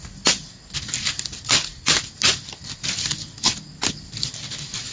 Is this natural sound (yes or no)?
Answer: yes